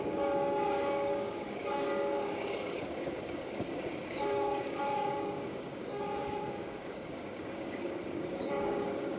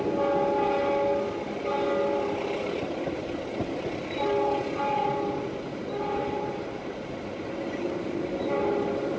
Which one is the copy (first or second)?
first